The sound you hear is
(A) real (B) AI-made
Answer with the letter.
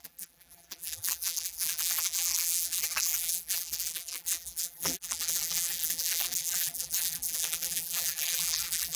B